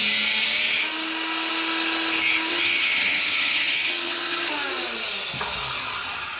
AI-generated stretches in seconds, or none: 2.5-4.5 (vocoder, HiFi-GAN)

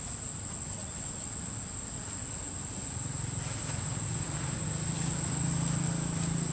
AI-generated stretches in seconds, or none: none

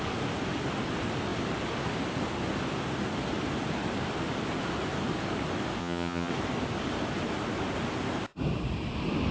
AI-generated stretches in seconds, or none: 5.8-6.3 (vocoder, HiFi-GAN)

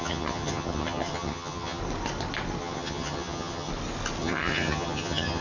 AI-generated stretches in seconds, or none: 0.0-1.8 (vocoder, HiFi-GAN); 2.6-3.7; 4.2-5.4

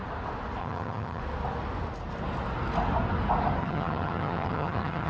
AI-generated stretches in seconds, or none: 0.6-1.2 (vocoder, HiFi-GAN); 3.6-5.1

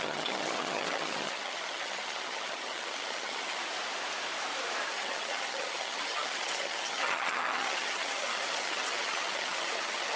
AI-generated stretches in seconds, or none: 0.0-3.6 (vocoder, HiFi-GAN); 4.9-10.2

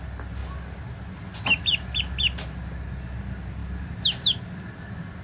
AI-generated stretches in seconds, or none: none

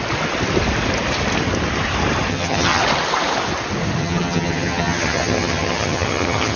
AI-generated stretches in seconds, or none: 2.3-2.8 (vocoder, HiFi-GAN); 4.0-6.6